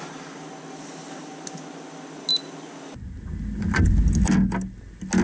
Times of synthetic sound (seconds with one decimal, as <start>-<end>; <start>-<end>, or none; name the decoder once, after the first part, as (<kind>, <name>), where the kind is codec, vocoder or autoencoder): none